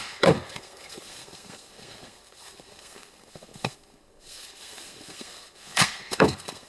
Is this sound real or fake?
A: fake